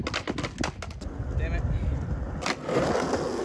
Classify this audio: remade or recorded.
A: recorded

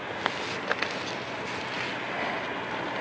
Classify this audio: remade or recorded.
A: recorded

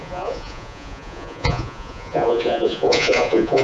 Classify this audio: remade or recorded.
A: remade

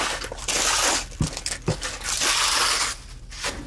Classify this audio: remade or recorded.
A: recorded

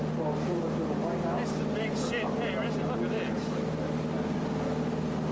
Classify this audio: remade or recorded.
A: recorded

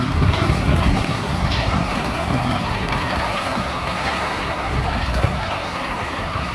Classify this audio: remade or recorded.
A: remade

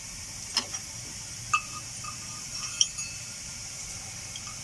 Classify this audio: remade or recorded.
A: recorded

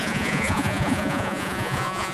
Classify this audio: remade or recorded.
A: remade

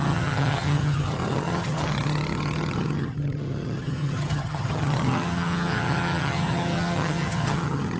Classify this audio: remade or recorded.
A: remade